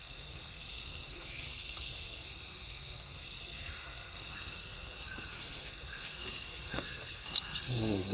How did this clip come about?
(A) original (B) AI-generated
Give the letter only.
B